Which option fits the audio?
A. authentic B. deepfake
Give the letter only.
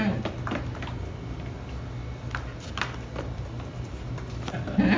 A